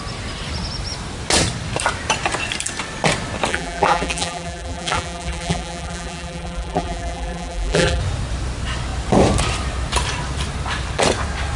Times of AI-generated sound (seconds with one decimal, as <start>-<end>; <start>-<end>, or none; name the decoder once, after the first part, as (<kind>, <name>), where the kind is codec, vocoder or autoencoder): 3.5-8.0 (vocoder, BigVGAN v2)